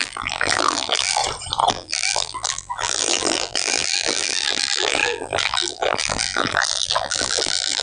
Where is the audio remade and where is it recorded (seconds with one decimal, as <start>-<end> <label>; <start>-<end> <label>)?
0.0-1.2 remade; 1.2-1.7 recorded; 1.7-7.8 remade